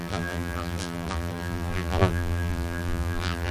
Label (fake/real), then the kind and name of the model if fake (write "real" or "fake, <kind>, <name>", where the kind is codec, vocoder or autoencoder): fake, vocoder, BigVGAN v2